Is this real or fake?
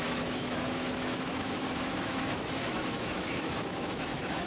fake